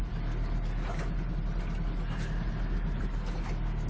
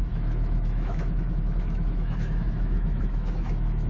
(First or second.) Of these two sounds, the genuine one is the first